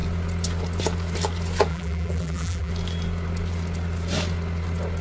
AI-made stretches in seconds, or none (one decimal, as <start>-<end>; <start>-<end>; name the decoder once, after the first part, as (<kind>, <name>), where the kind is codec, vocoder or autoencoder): 1.7-2.7 (vocoder, BigVGAN v2)